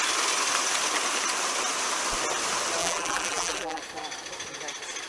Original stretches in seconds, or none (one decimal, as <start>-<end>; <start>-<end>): 0.0-2.8; 3.8-5.1